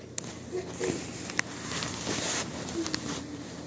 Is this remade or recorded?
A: recorded